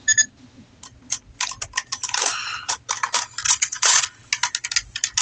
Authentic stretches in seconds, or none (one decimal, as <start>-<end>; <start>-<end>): 0.0-3.4; 4.1-5.2